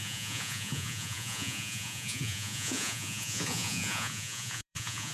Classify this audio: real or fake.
fake